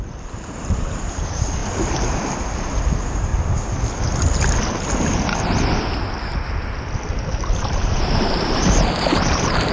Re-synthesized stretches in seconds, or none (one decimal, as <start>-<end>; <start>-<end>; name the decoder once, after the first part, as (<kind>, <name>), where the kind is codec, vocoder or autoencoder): 0.0-1.6 (vocoder, BigVGAN v2); 2.5-3.3; 7.5-9.7